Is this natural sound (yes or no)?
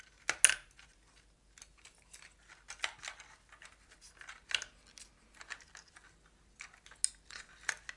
yes